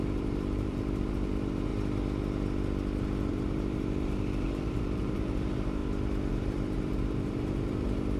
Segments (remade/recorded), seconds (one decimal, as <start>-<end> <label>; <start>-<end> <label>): 0.0-1.7 remade; 1.7-3.3 recorded; 3.3-5.8 remade; 5.8-6.3 recorded; 6.3-8.2 remade